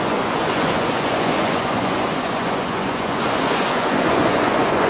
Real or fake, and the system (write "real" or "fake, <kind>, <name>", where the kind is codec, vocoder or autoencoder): fake, vocoder, Vocos